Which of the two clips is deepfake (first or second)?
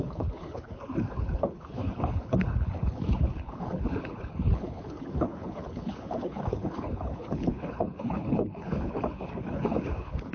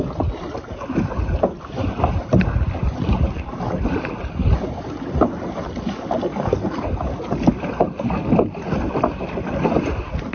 first